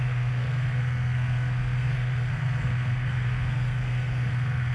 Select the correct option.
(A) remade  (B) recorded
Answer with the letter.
A